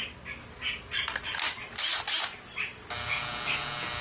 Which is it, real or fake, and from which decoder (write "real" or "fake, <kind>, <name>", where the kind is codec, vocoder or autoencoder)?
real